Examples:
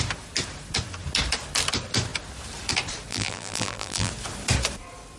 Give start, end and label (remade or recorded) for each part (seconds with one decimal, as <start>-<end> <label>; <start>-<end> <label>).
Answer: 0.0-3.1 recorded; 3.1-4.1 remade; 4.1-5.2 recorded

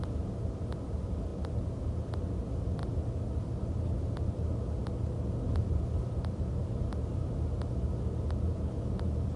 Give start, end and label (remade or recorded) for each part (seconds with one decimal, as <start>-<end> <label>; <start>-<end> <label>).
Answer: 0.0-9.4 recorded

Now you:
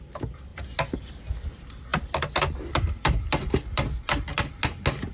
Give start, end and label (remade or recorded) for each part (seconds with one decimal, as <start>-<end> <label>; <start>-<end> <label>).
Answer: 0.0-5.1 recorded

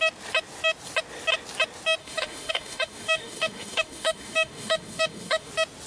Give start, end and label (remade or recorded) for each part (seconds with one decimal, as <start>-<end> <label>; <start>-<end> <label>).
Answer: 0.0-2.0 recorded; 2.0-5.5 remade; 5.5-5.9 recorded

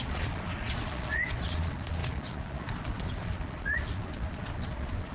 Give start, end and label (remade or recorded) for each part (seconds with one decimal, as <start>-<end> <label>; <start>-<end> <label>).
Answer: 0.0-5.1 remade

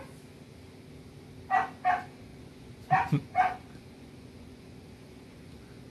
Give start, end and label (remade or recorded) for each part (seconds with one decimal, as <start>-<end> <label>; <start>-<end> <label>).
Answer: 0.0-2.3 recorded; 2.3-5.9 remade

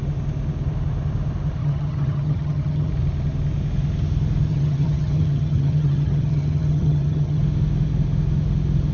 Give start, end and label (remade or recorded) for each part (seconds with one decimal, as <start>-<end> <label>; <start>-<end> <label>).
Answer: 0.0-1.6 recorded; 1.6-2.9 remade; 2.9-4.5 recorded; 4.5-7.4 remade; 7.4-8.9 recorded

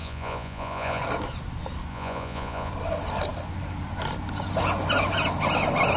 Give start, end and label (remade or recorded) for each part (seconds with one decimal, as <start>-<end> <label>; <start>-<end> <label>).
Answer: 0.0-1.0 remade; 1.0-1.9 recorded; 1.9-2.7 remade; 2.7-6.0 recorded